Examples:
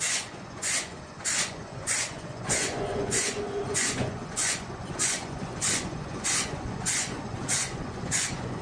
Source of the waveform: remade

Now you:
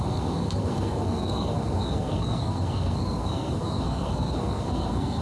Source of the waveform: remade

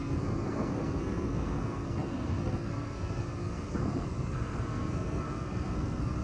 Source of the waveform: remade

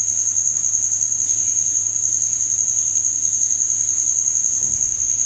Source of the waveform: recorded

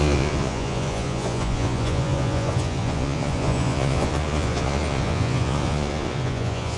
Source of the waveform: remade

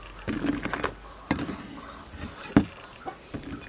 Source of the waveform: recorded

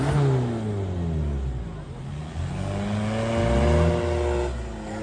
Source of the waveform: recorded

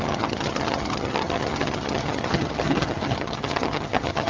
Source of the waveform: remade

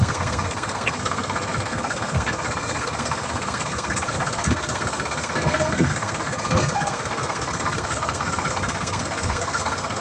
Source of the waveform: remade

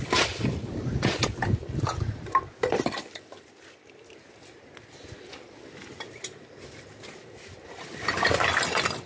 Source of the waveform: recorded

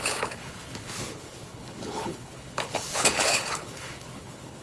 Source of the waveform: remade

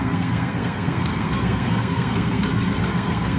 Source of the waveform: remade